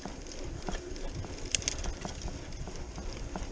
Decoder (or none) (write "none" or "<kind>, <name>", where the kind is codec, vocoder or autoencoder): none